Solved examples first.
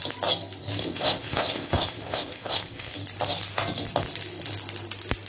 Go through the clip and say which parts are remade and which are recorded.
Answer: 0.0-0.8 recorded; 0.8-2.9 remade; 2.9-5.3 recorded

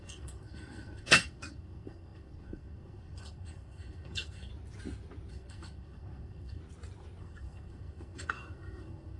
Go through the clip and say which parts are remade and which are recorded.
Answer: 0.0-4.5 remade; 4.5-5.3 recorded; 5.3-6.6 remade; 6.6-7.2 recorded; 7.2-9.2 remade

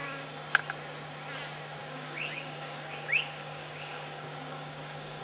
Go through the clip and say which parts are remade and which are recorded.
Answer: 0.0-1.8 recorded; 1.8-5.2 remade

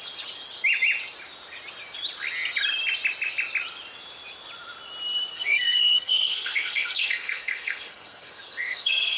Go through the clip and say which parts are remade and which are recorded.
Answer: 0.0-5.3 recorded; 5.3-9.2 remade

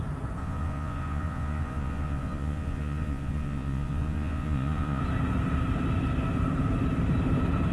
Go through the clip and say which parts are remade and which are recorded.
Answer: 0.0-0.4 recorded; 0.4-5.0 remade; 5.0-7.7 recorded

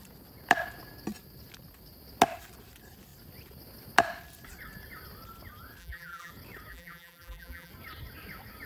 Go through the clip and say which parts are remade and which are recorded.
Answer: 0.0-5.8 recorded; 5.8-6.3 remade; 6.3-6.7 recorded; 6.7-7.7 remade; 7.7-8.7 recorded

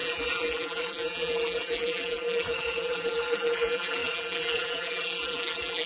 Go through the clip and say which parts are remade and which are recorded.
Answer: 0.0-5.9 remade